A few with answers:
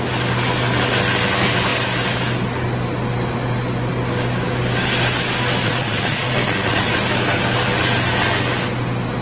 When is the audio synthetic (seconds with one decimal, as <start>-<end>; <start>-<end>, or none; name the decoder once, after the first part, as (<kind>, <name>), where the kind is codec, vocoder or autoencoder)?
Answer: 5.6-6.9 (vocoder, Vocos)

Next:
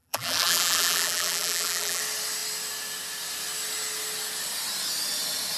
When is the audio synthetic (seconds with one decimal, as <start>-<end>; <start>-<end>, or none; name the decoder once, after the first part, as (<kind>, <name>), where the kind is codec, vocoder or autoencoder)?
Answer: 0.0-2.0 (vocoder, BigVGAN v2)

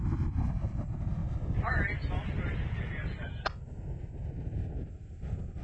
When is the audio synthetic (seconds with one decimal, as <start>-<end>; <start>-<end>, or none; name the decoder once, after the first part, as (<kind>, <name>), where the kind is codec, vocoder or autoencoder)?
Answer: 0.0-1.2 (vocoder, BigVGAN v2); 4.2-5.6

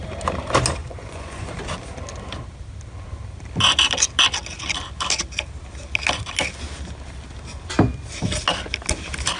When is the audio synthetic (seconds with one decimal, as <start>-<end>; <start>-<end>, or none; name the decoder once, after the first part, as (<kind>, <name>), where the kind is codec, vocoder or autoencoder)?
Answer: 0.8-1.5 (vocoder, Vocos)